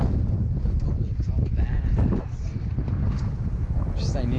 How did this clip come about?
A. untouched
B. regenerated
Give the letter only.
A